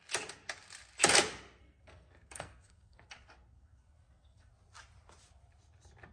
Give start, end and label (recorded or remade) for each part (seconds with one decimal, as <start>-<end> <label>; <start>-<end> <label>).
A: 0.0-1.6 recorded; 1.6-4.5 remade; 4.5-6.1 recorded